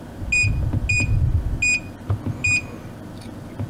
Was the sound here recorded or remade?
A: recorded